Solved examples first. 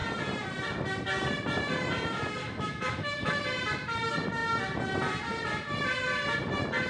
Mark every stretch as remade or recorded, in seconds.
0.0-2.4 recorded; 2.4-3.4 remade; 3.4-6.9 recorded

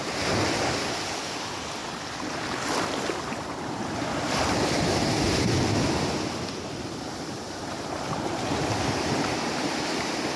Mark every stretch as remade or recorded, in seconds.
0.0-10.4 remade

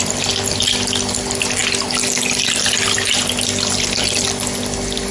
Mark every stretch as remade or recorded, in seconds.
0.0-5.1 recorded

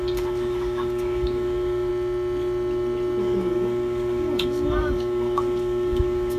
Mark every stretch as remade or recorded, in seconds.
0.0-1.9 remade; 1.9-3.2 recorded; 3.2-6.4 remade

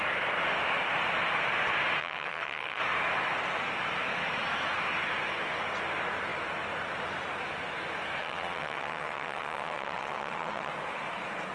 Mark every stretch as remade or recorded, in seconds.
0.0-2.0 recorded; 2.0-2.8 remade; 2.8-8.2 recorded; 8.2-10.7 remade; 10.7-11.5 recorded

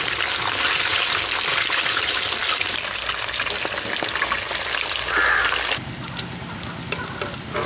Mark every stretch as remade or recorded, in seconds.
0.0-7.7 recorded